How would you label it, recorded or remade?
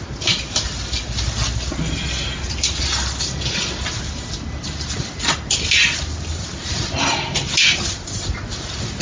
recorded